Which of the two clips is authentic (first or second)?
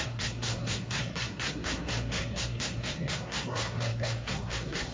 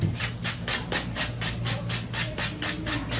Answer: second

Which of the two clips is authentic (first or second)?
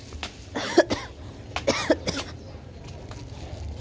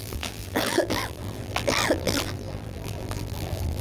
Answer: first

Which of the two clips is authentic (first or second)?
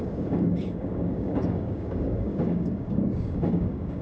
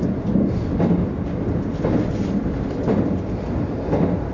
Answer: second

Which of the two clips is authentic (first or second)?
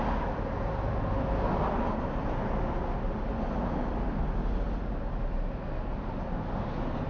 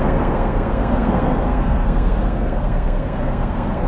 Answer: first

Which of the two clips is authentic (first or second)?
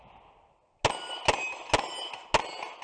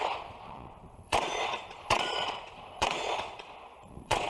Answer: first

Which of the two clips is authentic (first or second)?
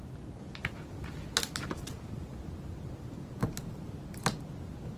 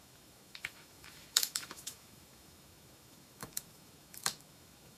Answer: first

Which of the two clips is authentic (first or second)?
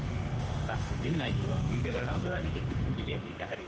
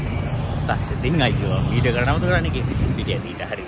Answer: second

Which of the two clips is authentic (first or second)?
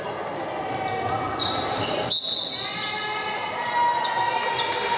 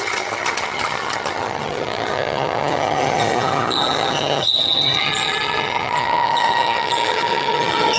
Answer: first